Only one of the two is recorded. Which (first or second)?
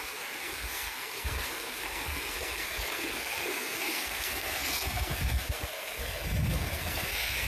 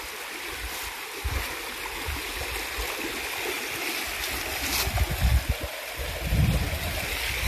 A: second